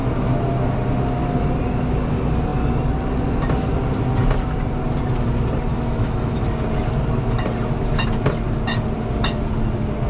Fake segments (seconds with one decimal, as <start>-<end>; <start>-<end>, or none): 5.7-6.4